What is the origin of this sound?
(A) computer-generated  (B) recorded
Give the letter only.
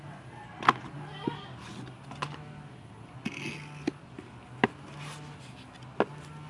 B